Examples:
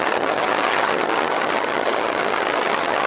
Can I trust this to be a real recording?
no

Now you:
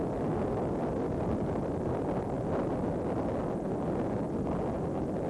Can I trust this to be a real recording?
yes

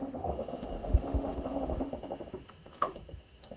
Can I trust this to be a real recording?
no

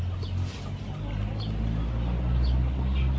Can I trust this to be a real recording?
yes